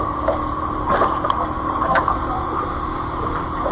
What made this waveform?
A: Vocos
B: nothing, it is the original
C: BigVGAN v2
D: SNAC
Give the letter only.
C